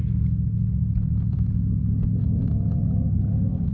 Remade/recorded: recorded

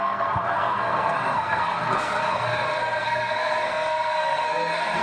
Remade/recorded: remade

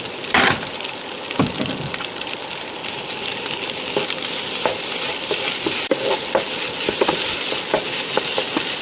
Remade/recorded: recorded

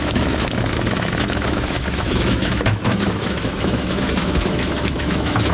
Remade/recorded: remade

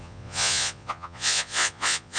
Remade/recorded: remade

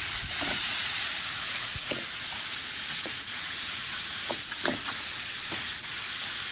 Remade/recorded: remade